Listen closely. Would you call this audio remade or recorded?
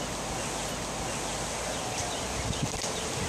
recorded